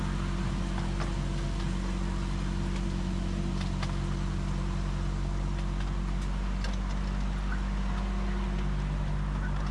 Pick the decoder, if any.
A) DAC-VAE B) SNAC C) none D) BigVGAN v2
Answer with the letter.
C